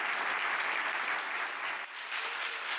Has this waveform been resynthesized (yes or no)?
no